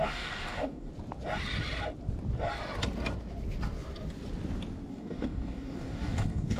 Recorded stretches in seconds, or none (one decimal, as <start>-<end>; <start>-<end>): 0.9-4.9